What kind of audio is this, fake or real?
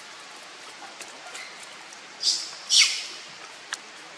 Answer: real